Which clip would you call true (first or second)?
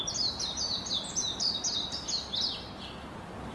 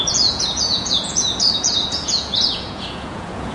first